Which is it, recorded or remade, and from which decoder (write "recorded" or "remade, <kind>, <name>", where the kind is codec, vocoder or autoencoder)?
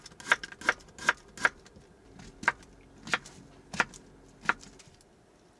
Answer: recorded